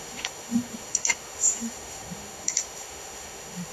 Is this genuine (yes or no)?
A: no